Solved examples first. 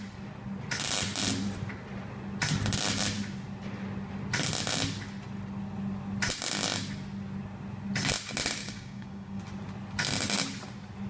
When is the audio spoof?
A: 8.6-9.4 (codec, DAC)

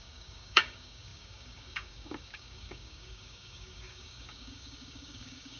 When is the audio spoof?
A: 0.0-5.6 (codec, DAC)